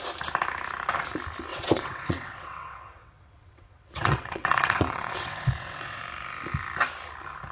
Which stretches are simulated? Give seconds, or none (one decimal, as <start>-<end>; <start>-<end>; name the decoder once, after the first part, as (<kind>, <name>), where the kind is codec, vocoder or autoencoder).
1.5-6.0 (vocoder, WaveNeXt)